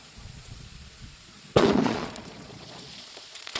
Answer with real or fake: fake